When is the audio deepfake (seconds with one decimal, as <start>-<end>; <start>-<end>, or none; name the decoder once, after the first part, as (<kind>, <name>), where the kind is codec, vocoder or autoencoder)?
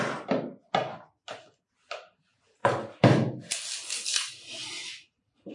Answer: none